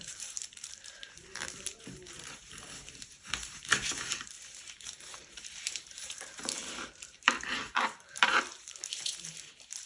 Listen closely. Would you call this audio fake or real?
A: fake